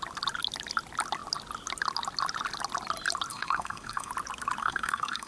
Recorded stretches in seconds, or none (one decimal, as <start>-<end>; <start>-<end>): 0.0-3.3; 4.1-4.6